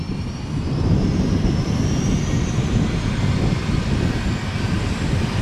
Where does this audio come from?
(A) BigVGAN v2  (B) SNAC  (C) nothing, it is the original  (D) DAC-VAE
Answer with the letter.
C